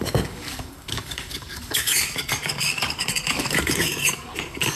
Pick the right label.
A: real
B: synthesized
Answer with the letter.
B